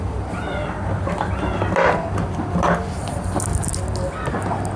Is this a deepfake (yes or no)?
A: yes